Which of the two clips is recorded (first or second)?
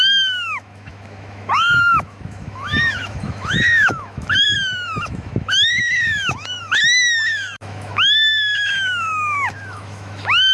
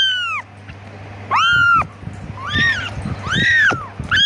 second